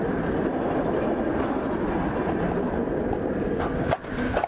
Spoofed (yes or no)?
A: no